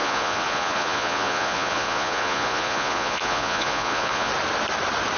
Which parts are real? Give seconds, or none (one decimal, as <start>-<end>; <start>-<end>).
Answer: 4.3-5.2